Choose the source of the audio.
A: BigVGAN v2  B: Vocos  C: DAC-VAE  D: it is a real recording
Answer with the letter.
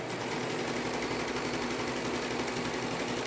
D